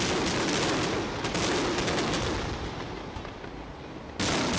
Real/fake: real